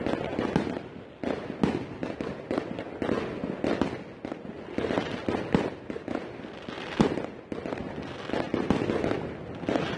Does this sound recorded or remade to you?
recorded